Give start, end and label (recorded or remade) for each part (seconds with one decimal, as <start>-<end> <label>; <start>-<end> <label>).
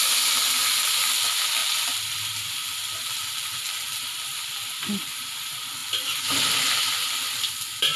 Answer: 0.0-1.6 recorded; 1.6-5.0 remade; 5.0-8.0 recorded